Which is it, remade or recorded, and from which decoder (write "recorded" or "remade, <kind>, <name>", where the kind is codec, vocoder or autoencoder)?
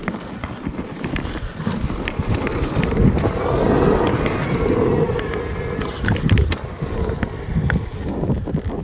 recorded